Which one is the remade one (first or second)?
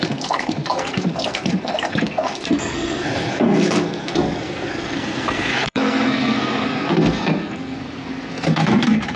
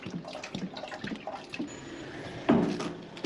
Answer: first